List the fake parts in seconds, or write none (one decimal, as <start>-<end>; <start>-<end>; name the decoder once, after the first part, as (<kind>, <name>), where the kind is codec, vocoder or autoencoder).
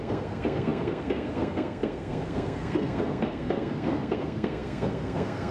0.0-5.5 (codec, SNAC)